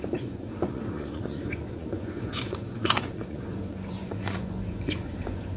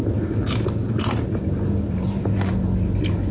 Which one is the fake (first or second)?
first